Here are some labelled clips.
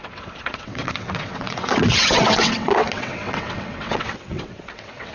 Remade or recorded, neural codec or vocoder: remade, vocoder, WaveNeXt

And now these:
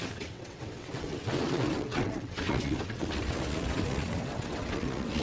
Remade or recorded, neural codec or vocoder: remade, vocoder, WaveNeXt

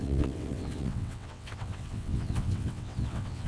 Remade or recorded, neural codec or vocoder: remade, vocoder, WaveNeXt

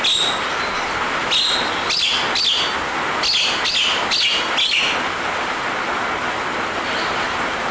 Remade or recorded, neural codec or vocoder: recorded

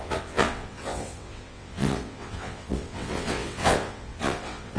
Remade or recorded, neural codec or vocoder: remade, vocoder, WaveNeXt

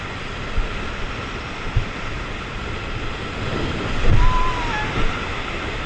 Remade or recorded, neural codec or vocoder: recorded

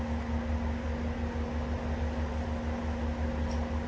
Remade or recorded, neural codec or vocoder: recorded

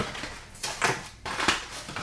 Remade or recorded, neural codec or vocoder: recorded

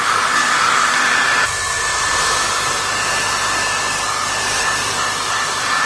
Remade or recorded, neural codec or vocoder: recorded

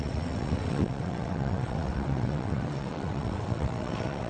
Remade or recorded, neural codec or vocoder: remade, vocoder, WaveNeXt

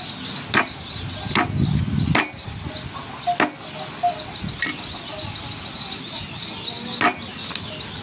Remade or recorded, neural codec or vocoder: recorded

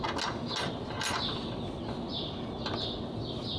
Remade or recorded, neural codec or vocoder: recorded